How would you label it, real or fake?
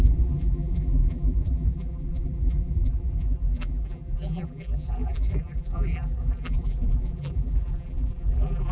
fake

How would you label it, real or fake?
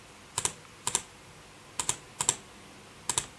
real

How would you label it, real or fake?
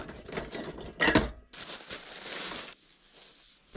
real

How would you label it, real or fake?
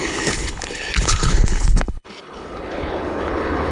fake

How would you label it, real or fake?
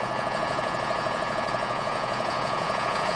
fake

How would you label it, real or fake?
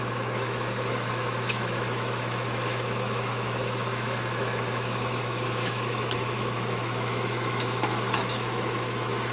fake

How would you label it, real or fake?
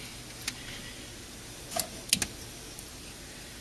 real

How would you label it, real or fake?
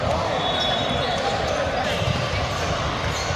real